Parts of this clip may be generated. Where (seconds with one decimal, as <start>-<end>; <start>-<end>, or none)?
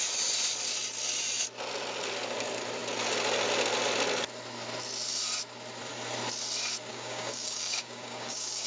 6.9-8.7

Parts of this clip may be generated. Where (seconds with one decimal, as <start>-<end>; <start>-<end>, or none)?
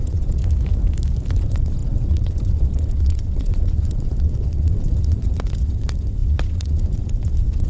0.0-0.4; 1.4-7.7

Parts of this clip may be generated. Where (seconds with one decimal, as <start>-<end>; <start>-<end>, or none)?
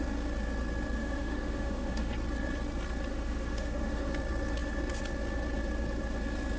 1.0-2.1; 3.1-4.1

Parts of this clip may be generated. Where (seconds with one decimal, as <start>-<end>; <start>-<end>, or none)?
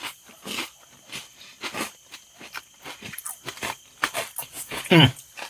4.4-5.1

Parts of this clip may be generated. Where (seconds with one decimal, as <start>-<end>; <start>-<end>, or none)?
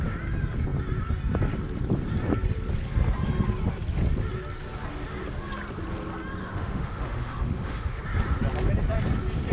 6.4-8.0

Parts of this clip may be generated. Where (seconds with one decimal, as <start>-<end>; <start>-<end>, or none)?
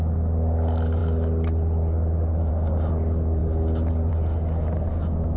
none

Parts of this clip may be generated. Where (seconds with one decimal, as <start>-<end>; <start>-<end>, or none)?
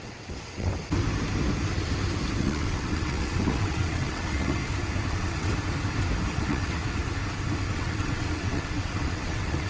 0.0-0.7; 2.4-4.6; 5.1-5.5; 6.3-6.8; 7.7-9.7